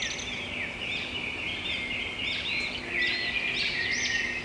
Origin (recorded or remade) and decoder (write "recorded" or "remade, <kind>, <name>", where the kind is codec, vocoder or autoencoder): recorded